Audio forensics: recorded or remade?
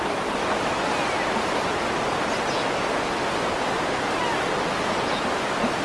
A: recorded